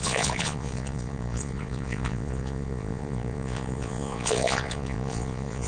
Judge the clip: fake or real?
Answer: fake